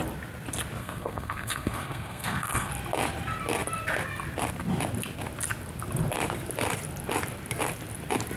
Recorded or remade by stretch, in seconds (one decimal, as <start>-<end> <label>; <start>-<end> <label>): 0.0-0.8 recorded; 0.8-2.7 remade; 2.7-8.4 recorded